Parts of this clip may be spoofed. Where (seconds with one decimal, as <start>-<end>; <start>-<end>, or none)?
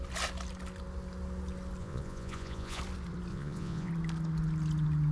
1.8-2.8; 3.3-3.9